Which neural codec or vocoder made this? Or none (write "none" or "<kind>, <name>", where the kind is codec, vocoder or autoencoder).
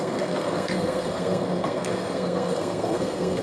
codec, SNAC